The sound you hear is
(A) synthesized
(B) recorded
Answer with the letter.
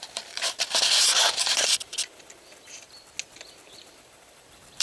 B